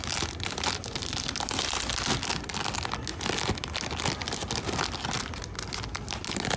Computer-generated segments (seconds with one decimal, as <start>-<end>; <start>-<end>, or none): none